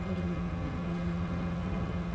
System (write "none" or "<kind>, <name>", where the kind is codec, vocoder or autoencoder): vocoder, HiFi-GAN